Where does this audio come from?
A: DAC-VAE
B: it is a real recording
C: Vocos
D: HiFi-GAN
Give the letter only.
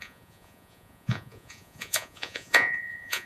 C